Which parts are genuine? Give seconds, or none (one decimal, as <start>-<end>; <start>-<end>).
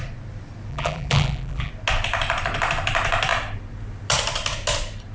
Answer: 0.0-0.7; 1.7-5.1